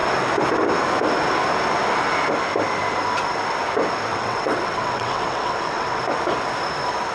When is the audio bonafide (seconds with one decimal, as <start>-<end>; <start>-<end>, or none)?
0.0-4.1; 6.0-7.1